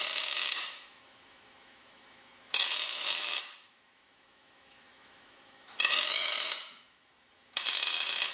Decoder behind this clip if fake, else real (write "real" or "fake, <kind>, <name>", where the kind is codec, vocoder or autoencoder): fake, autoencoder, DAC-VAE